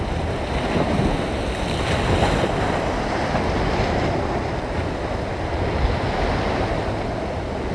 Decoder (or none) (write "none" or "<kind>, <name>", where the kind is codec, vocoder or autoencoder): none